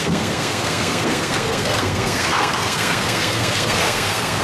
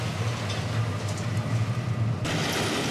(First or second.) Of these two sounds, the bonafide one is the second